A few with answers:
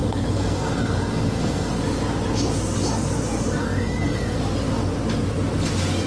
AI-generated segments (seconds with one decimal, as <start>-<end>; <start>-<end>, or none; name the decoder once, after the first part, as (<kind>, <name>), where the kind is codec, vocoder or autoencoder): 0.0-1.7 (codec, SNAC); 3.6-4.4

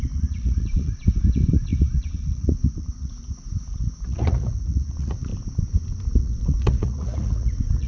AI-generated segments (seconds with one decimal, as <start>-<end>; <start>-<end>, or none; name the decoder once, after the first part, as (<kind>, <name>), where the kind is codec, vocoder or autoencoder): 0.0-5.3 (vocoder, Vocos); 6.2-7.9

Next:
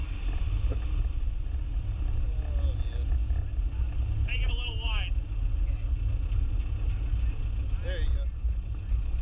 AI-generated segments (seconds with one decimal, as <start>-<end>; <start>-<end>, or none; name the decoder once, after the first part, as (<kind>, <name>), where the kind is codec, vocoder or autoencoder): none

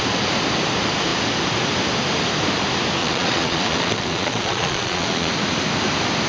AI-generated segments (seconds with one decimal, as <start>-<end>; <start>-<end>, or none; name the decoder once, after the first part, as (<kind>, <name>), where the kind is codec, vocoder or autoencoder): 3.0-5.3 (vocoder, Vocos)

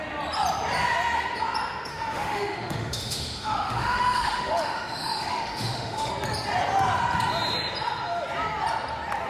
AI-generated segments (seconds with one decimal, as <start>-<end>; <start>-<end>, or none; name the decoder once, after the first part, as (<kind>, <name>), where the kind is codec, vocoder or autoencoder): 1.9-6.1 (autoencoder, DAC-VAE)